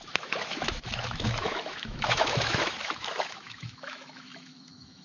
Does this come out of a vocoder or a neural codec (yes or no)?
yes